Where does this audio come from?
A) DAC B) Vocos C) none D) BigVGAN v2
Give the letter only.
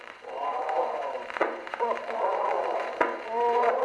B